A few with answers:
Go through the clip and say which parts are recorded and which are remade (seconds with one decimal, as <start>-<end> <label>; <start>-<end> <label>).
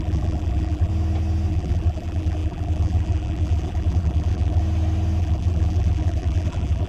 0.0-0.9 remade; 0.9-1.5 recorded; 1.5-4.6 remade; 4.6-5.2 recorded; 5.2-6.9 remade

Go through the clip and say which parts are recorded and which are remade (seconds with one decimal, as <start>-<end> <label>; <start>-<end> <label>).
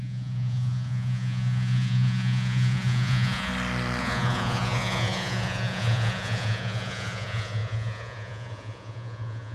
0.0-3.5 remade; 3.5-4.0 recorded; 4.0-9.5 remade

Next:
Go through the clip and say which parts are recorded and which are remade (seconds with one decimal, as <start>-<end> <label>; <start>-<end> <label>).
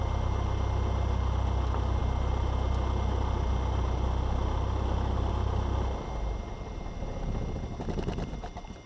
0.0-8.9 recorded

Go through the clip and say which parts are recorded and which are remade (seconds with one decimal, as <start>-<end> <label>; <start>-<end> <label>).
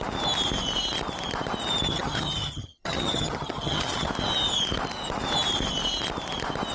0.0-1.9 recorded; 1.9-4.1 remade; 4.1-6.7 recorded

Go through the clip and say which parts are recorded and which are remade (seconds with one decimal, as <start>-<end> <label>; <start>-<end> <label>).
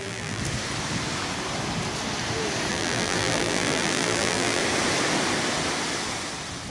0.0-0.4 remade; 0.4-2.7 recorded; 2.7-4.6 remade; 4.6-6.7 recorded